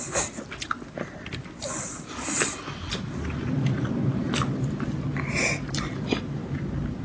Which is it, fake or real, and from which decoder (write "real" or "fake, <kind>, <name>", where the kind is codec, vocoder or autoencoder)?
real